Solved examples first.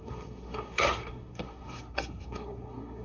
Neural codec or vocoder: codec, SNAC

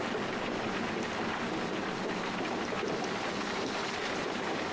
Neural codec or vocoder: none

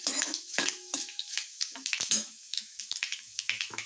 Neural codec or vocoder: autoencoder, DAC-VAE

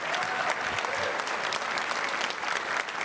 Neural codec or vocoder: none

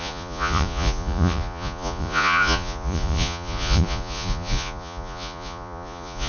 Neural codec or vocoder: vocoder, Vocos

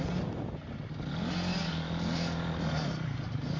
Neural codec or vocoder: none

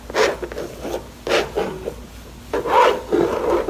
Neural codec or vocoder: none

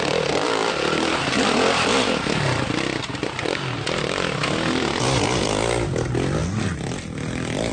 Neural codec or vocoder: none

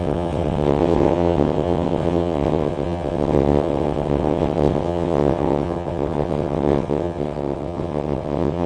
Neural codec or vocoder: vocoder, WaveNeXt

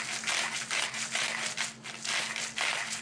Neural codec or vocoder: none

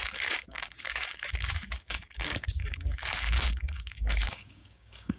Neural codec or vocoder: codec, DAC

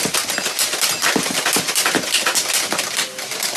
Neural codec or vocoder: none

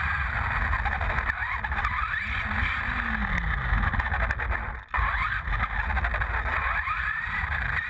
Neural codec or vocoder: none